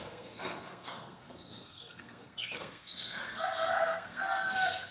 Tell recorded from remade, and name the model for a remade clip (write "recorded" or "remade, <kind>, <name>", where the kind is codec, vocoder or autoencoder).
remade, codec, SNAC